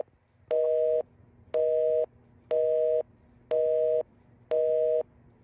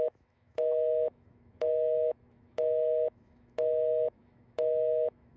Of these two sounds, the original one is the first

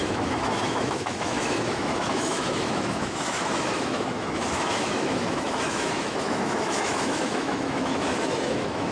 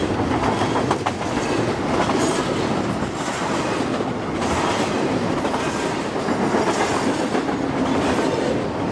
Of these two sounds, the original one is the second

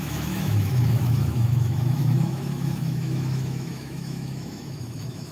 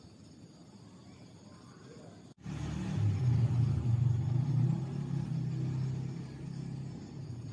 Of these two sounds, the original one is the second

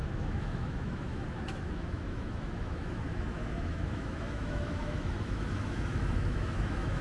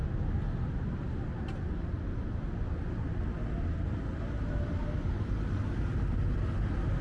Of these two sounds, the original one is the second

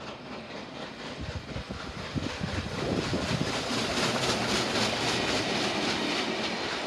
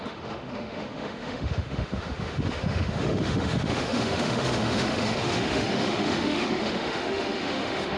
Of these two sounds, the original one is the first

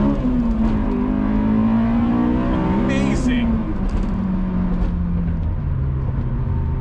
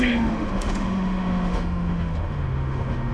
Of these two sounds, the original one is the first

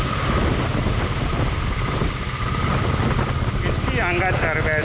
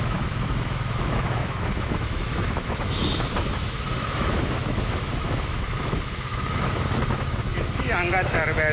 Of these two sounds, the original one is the first